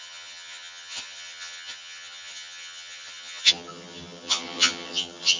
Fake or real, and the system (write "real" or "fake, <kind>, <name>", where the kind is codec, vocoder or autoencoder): fake, vocoder, HiFi-GAN